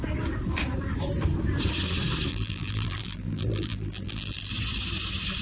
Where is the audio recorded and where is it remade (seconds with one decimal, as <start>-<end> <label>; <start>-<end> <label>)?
0.0-2.3 recorded; 2.3-4.5 remade; 4.5-5.4 recorded